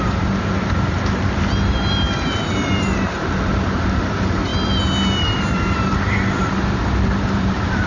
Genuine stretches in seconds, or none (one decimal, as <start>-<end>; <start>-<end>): 4.5-5.2; 5.9-6.4